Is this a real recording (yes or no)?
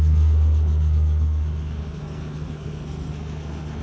no